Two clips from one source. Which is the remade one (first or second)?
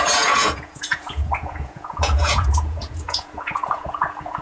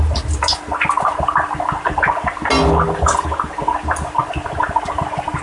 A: first